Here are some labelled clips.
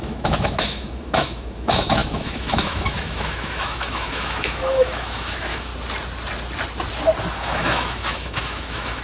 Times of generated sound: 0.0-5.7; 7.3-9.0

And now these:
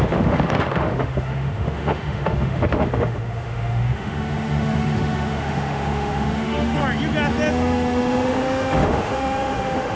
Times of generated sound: 0.0-6.8; 7.5-10.0

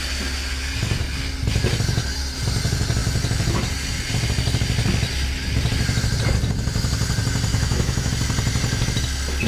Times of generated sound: 7.5-8.1

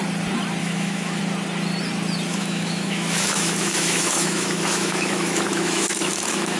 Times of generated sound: 0.6-1.2; 2.3-6.6

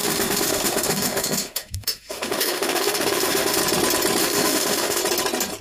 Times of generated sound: 0.0-3.6; 4.2-5.0

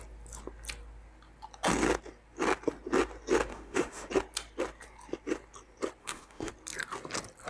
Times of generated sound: 3.5-4.1; 6.0-6.5

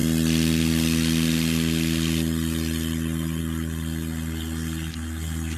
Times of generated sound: none

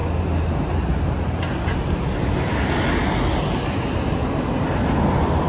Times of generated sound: none